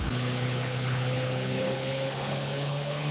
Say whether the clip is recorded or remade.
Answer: remade